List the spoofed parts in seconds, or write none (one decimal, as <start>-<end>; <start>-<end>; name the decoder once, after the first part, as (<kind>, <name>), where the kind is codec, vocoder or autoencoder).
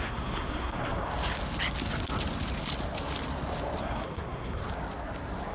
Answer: 0.0-1.1 (codec, SNAC); 3.8-4.6